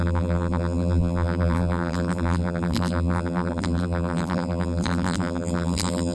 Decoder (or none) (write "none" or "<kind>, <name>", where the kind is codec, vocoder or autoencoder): vocoder, BigVGAN v2